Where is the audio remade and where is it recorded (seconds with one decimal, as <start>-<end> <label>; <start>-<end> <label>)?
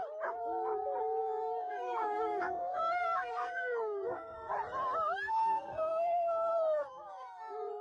0.0-1.2 recorded; 1.2-4.5 remade; 4.5-5.3 recorded; 5.3-7.8 remade